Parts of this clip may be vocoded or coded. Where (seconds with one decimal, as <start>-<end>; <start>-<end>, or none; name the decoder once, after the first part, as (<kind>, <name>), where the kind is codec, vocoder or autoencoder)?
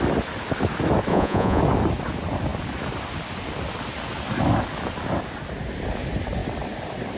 1.1-1.6 (vocoder, Vocos)